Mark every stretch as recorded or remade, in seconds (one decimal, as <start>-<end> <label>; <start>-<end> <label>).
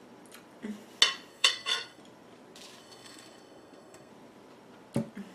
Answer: 0.0-1.3 recorded; 1.3-2.0 remade; 2.0-2.8 recorded; 2.8-4.1 remade; 4.1-5.3 recorded